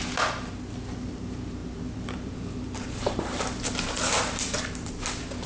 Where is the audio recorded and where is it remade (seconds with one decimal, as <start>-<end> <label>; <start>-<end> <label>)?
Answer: 0.0-1.6 recorded; 1.6-4.9 remade; 4.9-5.5 recorded